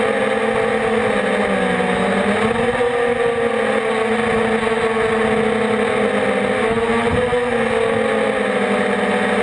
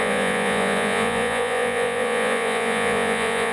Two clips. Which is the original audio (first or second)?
first